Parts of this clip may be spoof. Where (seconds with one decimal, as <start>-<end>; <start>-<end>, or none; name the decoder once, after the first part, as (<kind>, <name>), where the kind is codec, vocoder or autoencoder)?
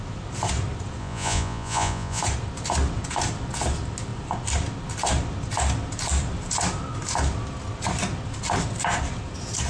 1.0-2.2 (vocoder, Vocos)